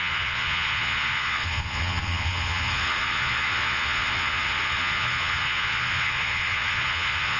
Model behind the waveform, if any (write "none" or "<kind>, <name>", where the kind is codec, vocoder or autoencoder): vocoder, Vocos